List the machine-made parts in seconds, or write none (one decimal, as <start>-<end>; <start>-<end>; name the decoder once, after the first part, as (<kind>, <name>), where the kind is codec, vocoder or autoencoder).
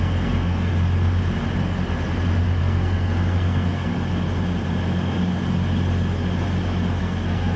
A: 0.0-0.7 (codec, SNAC); 2.6-3.9; 7.0-7.6